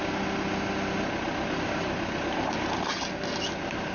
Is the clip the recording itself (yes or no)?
yes